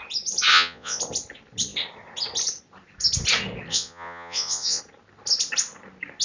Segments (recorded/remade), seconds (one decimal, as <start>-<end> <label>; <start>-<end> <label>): 0.0-0.5 recorded; 0.5-1.0 remade; 1.0-3.7 recorded; 3.7-4.8 remade; 4.8-6.2 recorded